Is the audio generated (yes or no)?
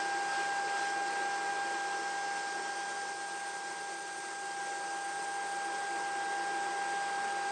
no